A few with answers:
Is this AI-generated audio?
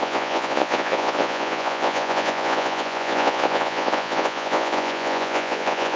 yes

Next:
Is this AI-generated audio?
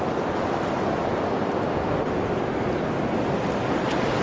no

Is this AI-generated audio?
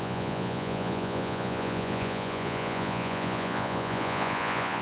yes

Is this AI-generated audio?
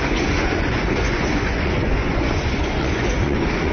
yes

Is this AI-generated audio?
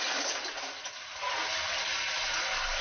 no